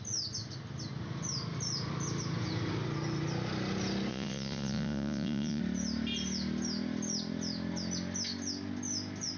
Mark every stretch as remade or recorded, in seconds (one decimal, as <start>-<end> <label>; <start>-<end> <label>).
0.0-4.1 recorded; 4.1-5.6 remade; 5.6-9.4 recorded